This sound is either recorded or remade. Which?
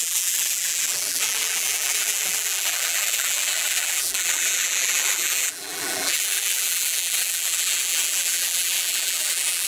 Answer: remade